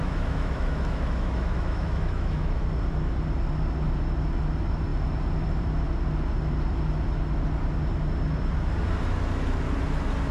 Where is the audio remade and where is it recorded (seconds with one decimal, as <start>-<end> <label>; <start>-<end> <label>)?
0.0-2.6 remade; 2.6-10.3 recorded

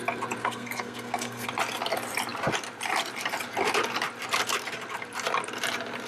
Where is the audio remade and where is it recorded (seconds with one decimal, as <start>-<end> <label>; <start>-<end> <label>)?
0.0-0.4 recorded; 0.4-1.5 remade; 1.5-6.1 recorded

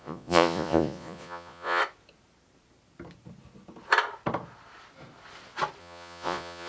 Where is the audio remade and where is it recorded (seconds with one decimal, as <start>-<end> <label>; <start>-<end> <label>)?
0.0-1.8 remade; 1.8-5.8 recorded; 5.8-6.7 remade

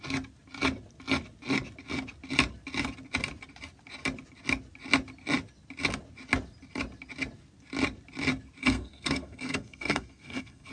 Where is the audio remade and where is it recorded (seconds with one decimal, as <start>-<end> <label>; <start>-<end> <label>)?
0.0-8.6 recorded; 8.6-10.7 remade

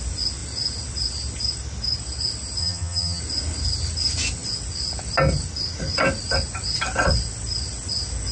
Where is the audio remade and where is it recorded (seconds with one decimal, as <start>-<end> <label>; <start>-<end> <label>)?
0.0-2.6 recorded; 2.6-3.2 remade; 3.2-8.3 recorded

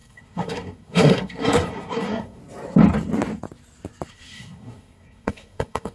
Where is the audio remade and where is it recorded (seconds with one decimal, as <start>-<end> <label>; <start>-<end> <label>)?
0.0-2.4 remade; 2.4-4.1 recorded; 4.1-5.9 remade